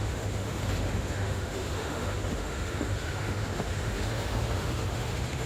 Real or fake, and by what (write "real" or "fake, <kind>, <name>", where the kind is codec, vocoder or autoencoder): fake, autoencoder, DAC-VAE